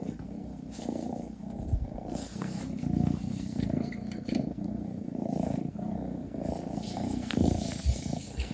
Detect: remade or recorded remade